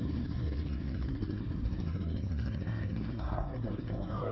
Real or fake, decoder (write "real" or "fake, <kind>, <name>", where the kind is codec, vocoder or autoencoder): fake, codec, SNAC